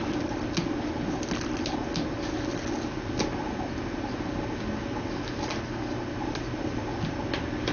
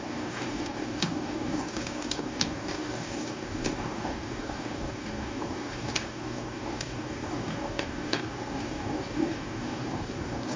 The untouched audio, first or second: first